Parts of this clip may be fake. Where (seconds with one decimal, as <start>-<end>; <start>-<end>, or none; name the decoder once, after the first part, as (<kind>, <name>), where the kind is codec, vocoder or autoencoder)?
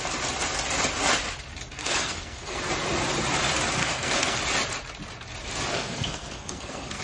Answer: 1.8-2.6 (codec, SNAC); 3.8-4.4; 5.7-7.0